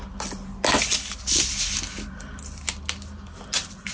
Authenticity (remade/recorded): recorded